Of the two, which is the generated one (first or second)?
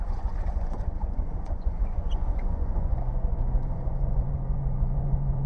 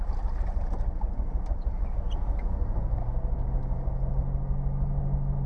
first